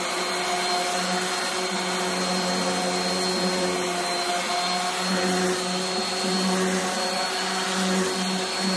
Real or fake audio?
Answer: real